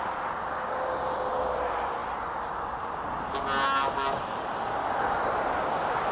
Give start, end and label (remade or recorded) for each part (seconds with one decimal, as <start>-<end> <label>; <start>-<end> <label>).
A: 0.0-6.1 recorded